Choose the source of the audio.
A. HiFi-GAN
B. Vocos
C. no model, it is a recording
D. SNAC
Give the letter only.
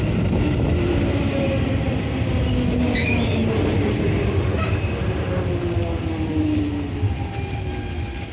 C